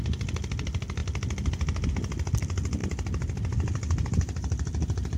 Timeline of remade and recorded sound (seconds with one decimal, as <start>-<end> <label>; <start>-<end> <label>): 0.0-2.8 recorded; 2.8-5.2 remade